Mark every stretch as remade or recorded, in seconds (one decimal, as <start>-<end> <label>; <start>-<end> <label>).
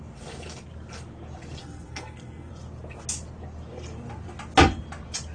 0.0-1.6 recorded; 1.6-2.5 remade; 2.5-5.3 recorded